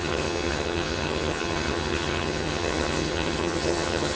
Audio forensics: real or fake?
fake